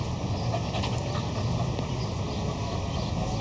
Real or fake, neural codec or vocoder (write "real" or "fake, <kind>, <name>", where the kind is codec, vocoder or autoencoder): real